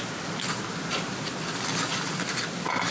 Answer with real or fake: real